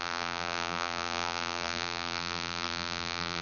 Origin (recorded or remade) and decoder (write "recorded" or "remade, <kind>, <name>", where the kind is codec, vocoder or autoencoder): remade, vocoder, BigVGAN v2